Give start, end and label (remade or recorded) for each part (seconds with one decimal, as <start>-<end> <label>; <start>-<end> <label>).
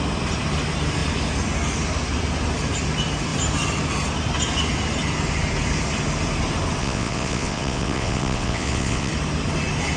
0.0-6.8 recorded; 6.8-9.1 remade; 9.1-10.0 recorded